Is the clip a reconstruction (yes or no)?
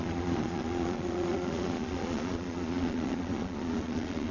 yes